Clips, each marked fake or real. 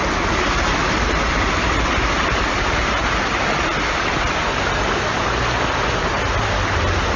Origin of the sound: real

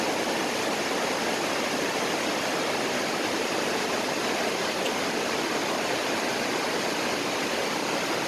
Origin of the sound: real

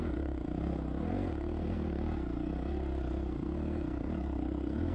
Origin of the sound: fake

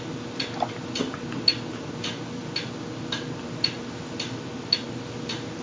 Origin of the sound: real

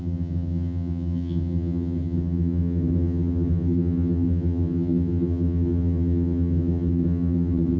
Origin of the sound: fake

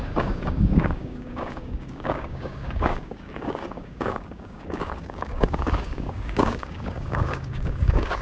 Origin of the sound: fake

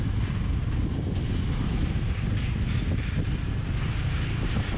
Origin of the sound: real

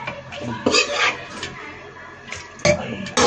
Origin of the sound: real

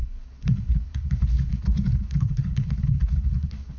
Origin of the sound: fake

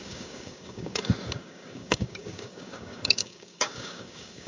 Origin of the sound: fake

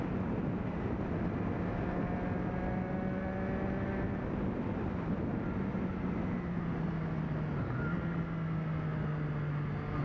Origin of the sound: real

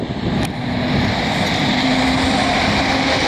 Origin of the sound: real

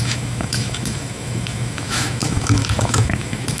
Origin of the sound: fake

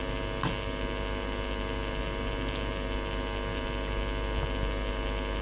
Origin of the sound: real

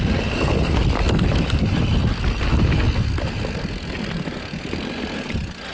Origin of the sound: real